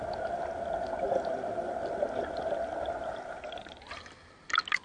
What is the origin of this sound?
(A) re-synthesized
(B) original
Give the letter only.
B